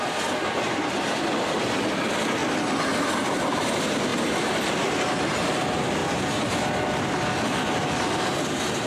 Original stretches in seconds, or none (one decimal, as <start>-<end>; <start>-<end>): 0.0-8.9